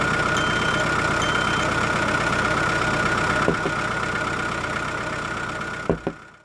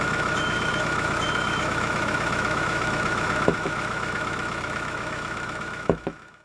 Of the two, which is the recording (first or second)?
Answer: first